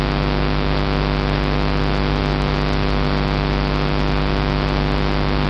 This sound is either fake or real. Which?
real